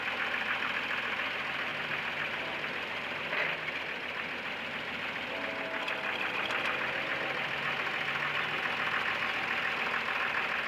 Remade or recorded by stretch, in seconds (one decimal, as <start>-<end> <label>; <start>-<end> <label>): 0.0-10.7 recorded